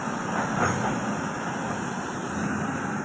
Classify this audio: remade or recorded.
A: recorded